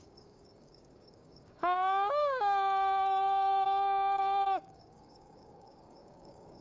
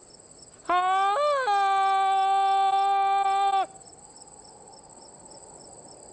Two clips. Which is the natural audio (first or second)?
second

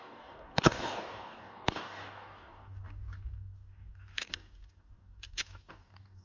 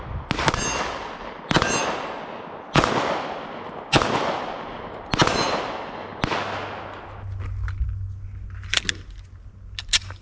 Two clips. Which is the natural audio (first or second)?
second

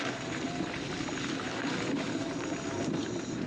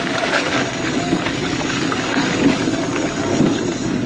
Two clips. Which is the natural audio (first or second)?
first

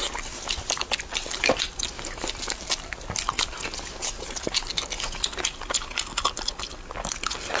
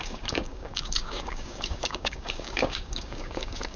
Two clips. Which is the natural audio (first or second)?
first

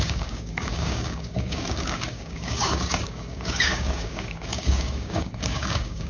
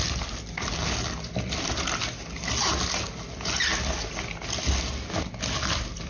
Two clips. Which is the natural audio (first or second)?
second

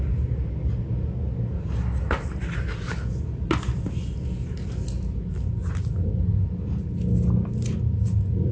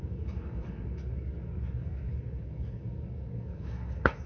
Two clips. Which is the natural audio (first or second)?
first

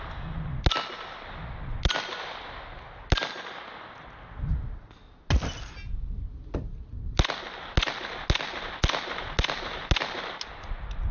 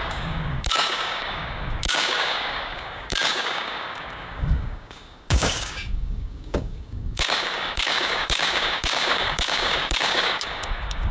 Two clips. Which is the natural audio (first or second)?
first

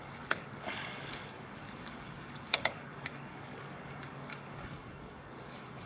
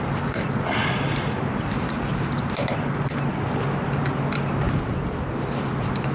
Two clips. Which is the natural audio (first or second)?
second